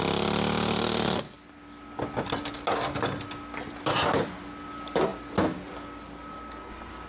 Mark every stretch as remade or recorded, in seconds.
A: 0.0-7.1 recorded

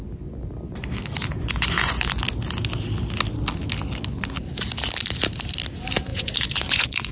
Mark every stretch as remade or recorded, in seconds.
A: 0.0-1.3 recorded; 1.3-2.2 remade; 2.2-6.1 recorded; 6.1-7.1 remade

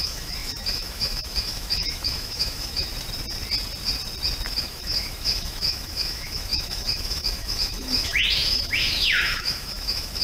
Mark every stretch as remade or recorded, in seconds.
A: 0.0-2.9 remade; 2.9-4.6 recorded; 4.6-10.2 remade

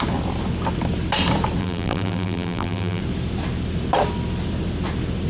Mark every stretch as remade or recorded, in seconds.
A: 0.0-1.6 recorded; 1.6-3.0 remade; 3.0-5.3 recorded

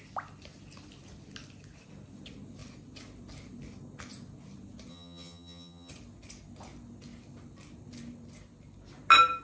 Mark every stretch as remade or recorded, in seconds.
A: 0.0-4.9 recorded; 4.9-5.9 remade; 5.9-9.4 recorded